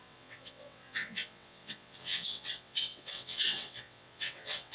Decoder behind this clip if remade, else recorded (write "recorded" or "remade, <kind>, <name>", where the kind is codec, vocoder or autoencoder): remade, vocoder, WaveNeXt